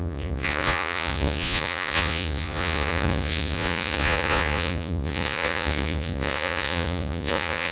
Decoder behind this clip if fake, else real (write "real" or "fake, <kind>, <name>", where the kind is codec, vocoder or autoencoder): fake, vocoder, Vocos